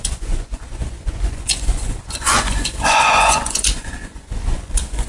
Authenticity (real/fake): fake